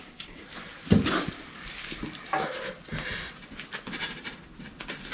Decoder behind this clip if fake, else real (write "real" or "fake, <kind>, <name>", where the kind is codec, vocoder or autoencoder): real